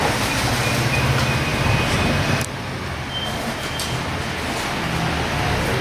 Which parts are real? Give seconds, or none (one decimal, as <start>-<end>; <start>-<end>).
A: 0.0-5.8

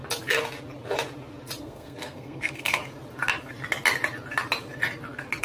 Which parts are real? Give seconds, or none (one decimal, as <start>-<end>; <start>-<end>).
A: 0.0-1.6; 2.8-5.4

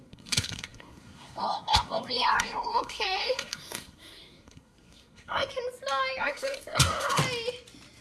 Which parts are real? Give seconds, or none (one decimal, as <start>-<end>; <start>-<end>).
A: 5.5-6.2; 7.2-8.0

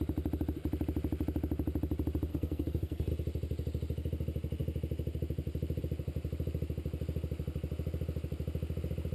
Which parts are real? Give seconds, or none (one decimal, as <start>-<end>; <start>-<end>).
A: 0.0-2.3; 3.1-9.1

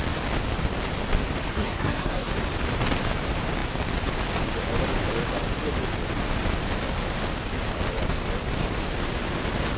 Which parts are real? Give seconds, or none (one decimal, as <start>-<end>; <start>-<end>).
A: 0.0-1.5; 2.3-9.8

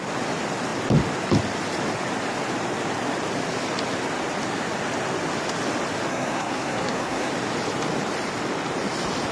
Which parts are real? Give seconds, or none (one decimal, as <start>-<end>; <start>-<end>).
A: 0.0-6.1; 7.3-9.3

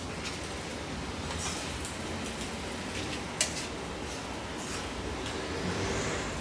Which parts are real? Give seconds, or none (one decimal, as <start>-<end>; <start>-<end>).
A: 0.0-6.4

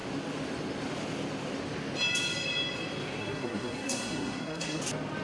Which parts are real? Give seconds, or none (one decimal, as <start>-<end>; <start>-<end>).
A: 0.0-3.2; 4.8-5.2